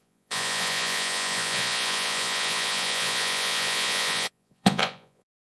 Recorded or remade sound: remade